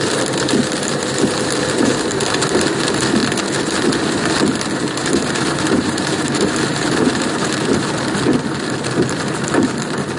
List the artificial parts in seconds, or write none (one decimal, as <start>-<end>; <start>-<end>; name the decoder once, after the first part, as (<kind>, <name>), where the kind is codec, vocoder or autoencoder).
5.0-8.0 (vocoder, BigVGAN v2)